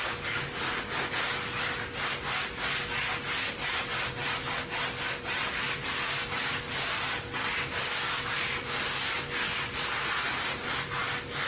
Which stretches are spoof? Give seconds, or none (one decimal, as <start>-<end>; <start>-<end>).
none